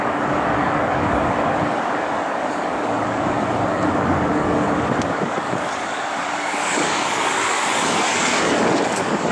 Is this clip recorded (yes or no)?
no